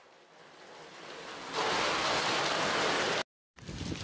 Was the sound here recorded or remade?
recorded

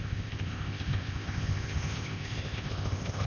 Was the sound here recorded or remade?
remade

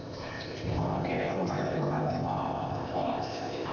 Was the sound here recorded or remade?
remade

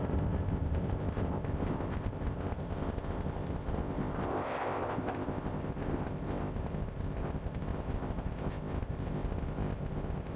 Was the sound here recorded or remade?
remade